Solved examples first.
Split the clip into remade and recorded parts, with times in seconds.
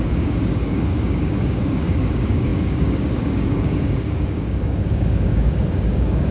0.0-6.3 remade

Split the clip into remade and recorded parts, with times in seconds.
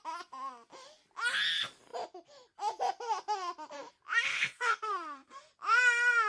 0.0-4.3 recorded; 4.3-5.5 remade; 5.5-6.3 recorded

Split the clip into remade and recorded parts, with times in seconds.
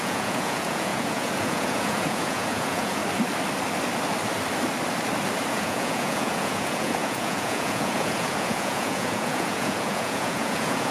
0.0-3.0 remade; 3.0-5.5 recorded; 5.5-10.9 remade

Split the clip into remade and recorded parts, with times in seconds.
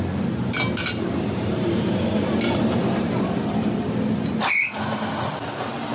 0.0-0.8 recorded; 0.8-1.9 remade; 1.9-5.9 recorded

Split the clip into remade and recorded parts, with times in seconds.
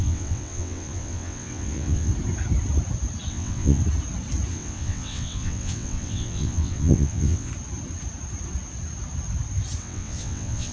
0.0-2.1 remade; 2.1-3.3 recorded; 3.3-3.8 remade; 3.8-4.5 recorded; 4.5-7.5 remade; 7.5-9.8 recorded; 9.8-10.7 remade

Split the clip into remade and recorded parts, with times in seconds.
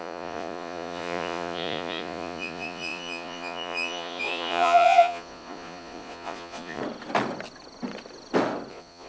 0.0-6.8 remade; 6.8-8.7 recorded; 8.7-9.1 remade